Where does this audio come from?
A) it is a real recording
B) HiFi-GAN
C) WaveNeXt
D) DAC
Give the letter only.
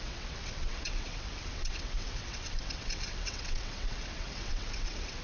C